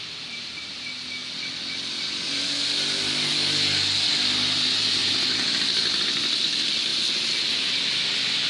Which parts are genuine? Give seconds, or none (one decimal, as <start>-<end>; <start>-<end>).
0.0-8.5